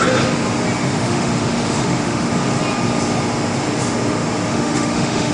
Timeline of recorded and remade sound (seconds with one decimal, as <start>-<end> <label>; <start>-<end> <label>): 0.0-0.8 recorded; 0.8-2.3 remade; 2.3-4.5 recorded; 4.5-5.3 remade